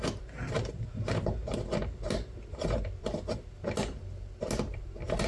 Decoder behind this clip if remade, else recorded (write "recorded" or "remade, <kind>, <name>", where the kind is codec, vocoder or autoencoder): recorded